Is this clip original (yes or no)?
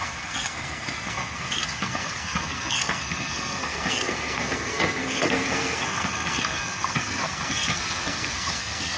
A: no